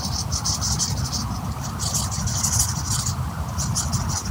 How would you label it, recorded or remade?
recorded